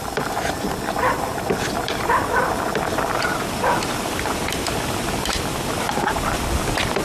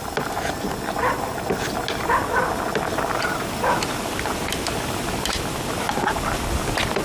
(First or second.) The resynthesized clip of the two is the first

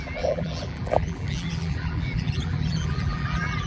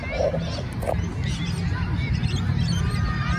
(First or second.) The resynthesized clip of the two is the first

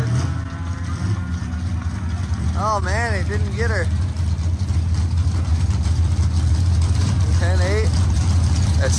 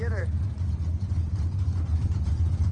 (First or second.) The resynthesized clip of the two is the second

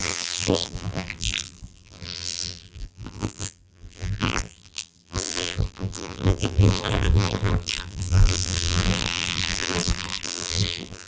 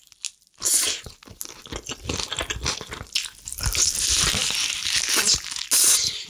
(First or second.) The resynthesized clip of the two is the first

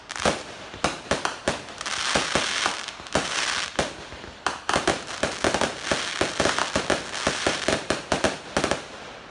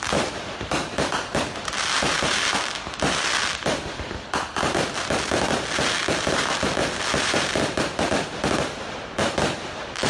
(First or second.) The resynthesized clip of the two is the second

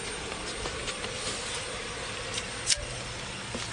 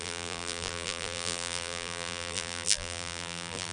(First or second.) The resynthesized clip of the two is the second